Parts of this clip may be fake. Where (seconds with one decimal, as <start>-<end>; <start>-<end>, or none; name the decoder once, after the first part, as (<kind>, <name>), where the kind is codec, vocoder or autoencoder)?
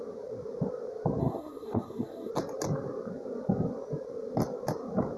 1.2-2.3 (codec, SNAC)